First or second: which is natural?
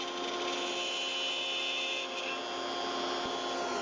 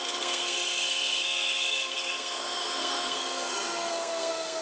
first